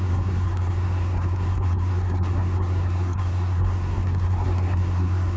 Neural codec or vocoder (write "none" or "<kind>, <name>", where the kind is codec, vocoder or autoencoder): codec, SNAC